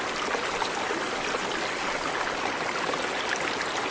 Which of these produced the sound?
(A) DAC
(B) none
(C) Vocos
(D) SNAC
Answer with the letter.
B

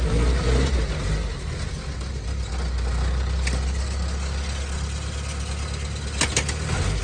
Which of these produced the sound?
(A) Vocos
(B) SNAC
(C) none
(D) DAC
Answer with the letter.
C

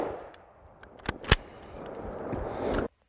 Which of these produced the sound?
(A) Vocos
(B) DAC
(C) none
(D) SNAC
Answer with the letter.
C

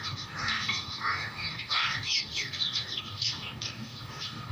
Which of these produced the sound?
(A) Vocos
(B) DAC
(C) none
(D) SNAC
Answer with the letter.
B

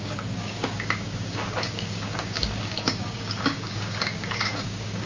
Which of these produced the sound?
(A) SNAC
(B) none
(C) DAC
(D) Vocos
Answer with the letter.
C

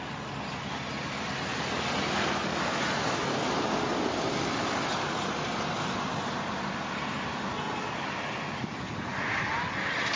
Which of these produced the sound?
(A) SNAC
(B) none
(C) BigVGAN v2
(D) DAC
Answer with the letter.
B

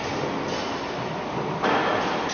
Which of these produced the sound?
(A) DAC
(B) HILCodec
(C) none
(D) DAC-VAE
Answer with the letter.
C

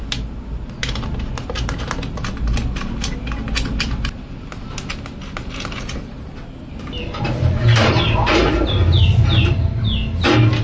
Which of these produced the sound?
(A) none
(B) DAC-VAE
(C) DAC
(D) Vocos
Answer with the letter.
A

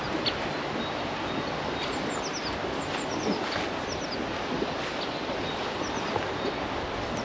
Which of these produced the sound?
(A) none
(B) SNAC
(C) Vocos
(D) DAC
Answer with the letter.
A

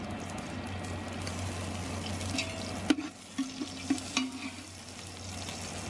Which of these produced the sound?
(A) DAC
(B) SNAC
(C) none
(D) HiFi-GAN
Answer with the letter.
C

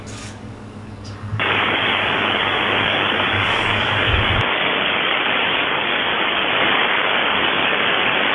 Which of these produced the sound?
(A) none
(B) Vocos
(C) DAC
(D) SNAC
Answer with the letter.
C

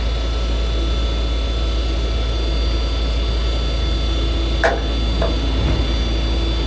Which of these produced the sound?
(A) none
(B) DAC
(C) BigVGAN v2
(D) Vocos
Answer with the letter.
A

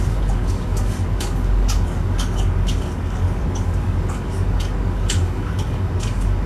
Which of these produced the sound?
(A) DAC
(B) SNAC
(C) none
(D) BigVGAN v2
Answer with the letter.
A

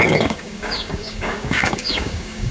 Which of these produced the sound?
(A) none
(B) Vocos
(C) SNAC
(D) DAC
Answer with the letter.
D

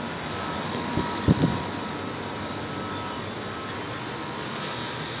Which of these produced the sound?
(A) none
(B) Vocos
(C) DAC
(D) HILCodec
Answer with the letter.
A